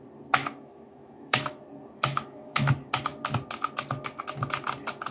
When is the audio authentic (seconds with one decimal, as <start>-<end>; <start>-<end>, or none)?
0.0-0.4; 1.6-2.1; 2.7-5.1